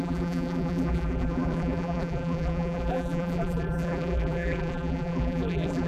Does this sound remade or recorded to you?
remade